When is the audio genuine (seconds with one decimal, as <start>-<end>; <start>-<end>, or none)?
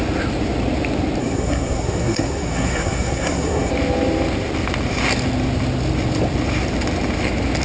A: 0.0-1.2; 3.7-7.6